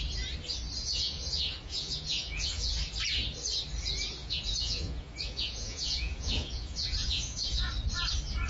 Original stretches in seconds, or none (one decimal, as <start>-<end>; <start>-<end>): 0.0-0.8; 2.7-4.2; 7.7-8.5

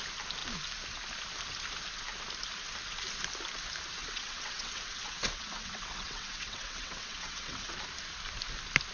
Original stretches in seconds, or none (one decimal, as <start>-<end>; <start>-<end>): 0.0-4.0; 7.7-8.9

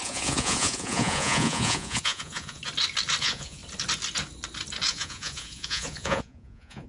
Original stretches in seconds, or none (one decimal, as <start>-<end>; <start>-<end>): 2.6-3.2; 3.6-4.9

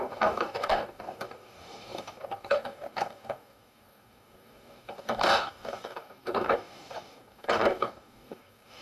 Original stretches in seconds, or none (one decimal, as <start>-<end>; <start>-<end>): none

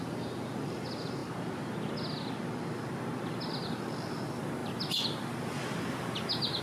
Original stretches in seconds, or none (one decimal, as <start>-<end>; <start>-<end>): 0.0-6.6